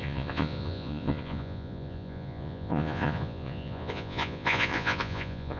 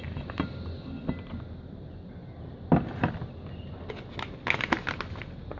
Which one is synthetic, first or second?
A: first